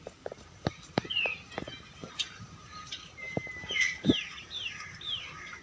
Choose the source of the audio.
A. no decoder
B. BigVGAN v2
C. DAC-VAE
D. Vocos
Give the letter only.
B